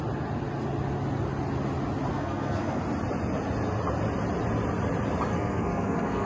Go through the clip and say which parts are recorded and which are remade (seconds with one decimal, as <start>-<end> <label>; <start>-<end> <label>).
0.0-2.1 recorded; 2.1-2.8 remade; 2.8-5.3 recorded; 5.3-6.3 remade